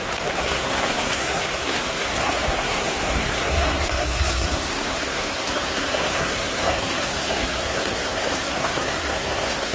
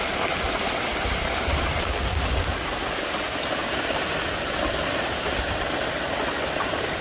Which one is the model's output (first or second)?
first